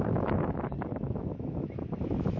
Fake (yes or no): yes